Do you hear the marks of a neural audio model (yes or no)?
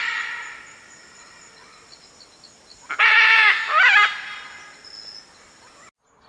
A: no